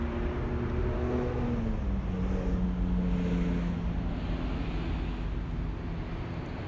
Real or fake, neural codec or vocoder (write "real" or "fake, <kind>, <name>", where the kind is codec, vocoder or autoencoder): real